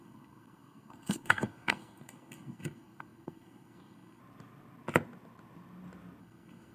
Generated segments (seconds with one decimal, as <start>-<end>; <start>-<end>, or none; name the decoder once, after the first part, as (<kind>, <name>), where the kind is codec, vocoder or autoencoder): 0.0-4.2 (codec, SNAC); 6.2-6.7